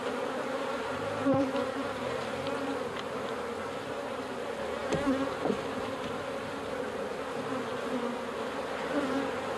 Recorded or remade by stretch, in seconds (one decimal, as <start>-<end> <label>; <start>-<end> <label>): 0.0-3.5 remade; 3.5-9.6 recorded